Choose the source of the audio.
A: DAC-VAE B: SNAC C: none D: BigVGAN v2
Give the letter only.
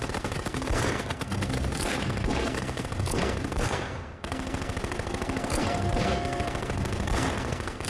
B